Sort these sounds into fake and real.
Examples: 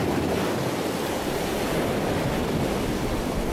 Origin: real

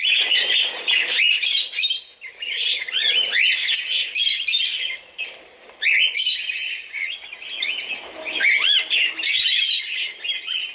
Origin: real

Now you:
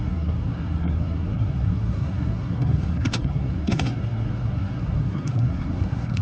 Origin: fake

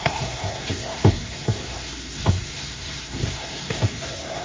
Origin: fake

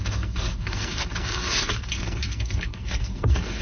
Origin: fake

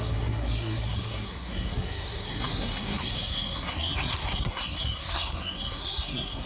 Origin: fake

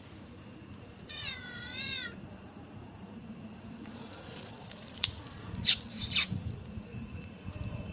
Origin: fake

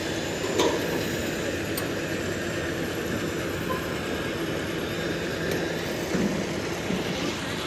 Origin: real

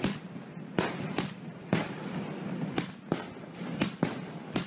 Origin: real